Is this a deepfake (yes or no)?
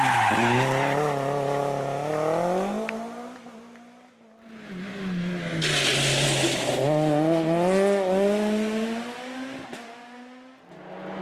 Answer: no